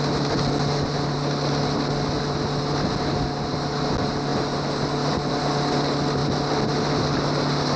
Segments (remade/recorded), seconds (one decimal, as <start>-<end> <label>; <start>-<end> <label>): 0.0-7.8 recorded